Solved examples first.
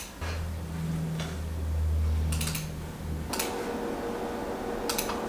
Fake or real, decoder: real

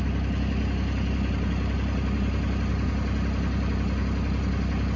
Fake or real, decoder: real